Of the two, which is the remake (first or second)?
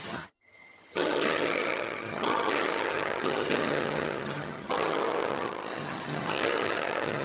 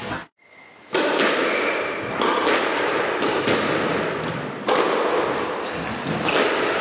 first